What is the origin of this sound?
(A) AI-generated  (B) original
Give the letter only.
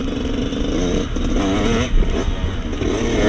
B